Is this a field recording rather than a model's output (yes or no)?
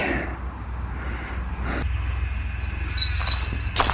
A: yes